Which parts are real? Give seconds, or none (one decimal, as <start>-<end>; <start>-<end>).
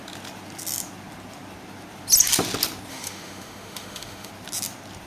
0.0-2.9; 4.3-5.1